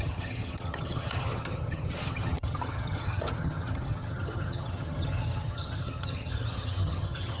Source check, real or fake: fake